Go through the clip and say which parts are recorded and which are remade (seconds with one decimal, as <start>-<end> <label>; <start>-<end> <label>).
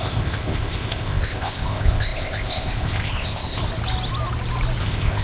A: 0.0-3.6 remade; 3.6-4.8 recorded; 4.8-5.2 remade